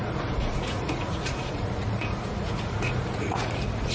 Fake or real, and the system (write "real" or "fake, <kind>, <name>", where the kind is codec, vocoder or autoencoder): fake, vocoder, Vocos